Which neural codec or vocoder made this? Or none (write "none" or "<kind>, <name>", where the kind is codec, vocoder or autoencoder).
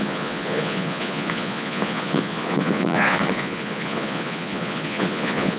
vocoder, Vocos